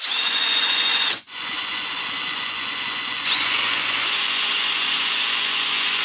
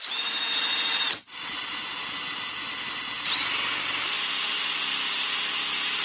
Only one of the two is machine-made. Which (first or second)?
first